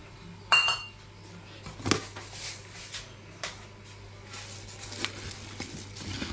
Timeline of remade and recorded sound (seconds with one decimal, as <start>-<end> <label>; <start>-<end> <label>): 0.0-6.3 recorded